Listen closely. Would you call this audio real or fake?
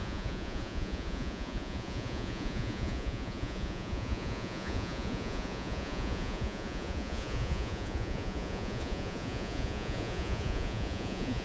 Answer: fake